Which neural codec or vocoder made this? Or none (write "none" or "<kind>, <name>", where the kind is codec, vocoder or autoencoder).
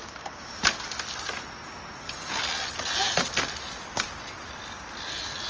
none